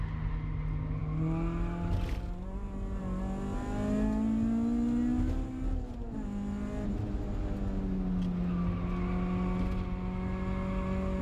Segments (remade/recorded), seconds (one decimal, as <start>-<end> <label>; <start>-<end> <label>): 0.0-11.2 recorded